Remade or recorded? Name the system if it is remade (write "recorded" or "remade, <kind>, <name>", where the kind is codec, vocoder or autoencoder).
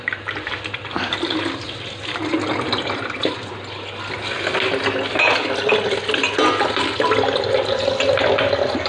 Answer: recorded